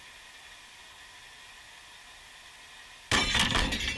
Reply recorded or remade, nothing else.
recorded